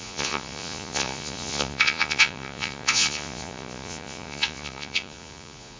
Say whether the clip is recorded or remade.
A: remade